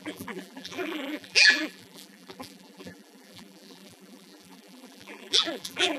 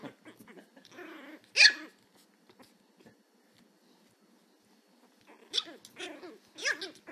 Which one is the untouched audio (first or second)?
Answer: second